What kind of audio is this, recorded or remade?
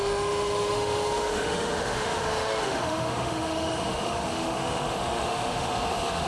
remade